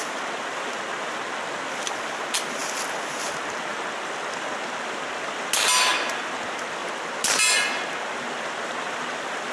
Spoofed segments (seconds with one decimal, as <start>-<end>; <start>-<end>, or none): none

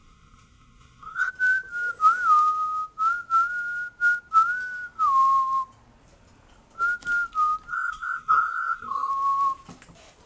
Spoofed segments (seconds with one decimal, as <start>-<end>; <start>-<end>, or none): 0.0-1.3; 7.7-9.1